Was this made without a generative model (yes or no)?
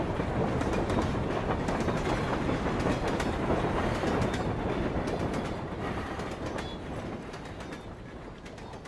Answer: yes